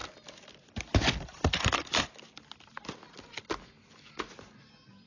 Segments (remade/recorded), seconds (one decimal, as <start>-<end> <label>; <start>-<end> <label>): 0.0-5.1 recorded